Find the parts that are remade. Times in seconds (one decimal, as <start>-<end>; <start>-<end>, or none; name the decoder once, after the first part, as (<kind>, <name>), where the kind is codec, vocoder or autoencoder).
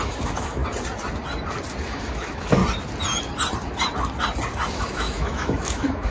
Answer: 0.0-0.6 (autoencoder, DAC-VAE); 1.8-2.6; 4.7-6.1